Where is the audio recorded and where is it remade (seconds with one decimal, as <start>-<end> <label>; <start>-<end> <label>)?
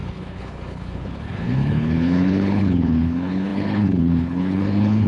0.0-5.1 remade